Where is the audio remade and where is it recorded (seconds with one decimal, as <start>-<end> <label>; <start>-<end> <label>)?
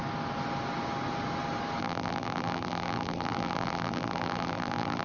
0.0-1.8 recorded; 1.8-5.0 remade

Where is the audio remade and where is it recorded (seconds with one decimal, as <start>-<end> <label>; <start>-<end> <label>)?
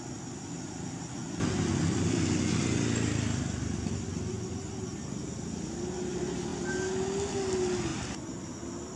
0.0-7.9 recorded; 7.9-8.5 remade; 8.5-9.0 recorded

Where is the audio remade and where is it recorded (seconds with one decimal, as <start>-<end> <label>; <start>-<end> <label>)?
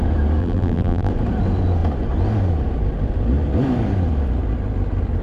0.0-0.4 recorded; 0.4-1.1 remade; 1.1-5.2 recorded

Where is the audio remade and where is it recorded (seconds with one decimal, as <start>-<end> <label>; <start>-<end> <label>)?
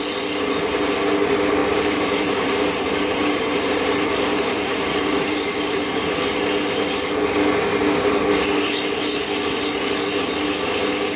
0.0-1.6 recorded; 1.6-6.1 remade; 6.1-11.2 recorded